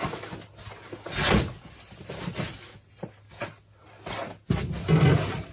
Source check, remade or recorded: recorded